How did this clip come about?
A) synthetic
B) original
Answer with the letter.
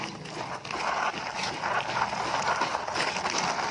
B